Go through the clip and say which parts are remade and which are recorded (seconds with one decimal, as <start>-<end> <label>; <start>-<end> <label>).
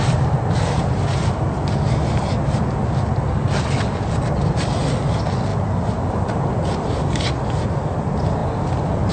0.0-9.1 recorded